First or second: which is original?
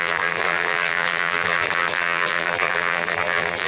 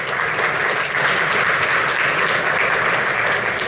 second